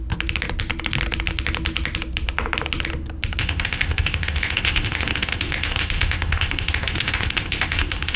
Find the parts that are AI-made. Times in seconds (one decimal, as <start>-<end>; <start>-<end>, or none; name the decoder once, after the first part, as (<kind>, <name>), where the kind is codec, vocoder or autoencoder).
3.4-8.2 (codec, ZipCodec)